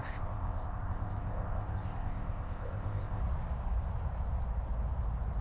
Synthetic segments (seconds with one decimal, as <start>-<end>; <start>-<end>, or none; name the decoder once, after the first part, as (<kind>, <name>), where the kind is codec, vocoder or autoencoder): 0.0-3.2 (codec, ZipCodec)